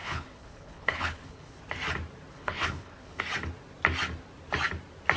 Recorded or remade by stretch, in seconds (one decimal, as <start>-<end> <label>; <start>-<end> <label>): 0.0-1.6 remade; 1.6-2.3 recorded; 2.3-3.2 remade; 3.2-5.2 recorded